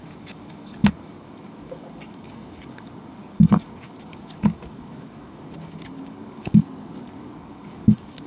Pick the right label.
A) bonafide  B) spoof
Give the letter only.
B